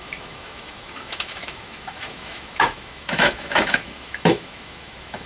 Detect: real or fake fake